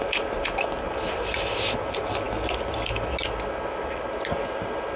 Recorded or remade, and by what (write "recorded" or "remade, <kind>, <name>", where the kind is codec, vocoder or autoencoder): recorded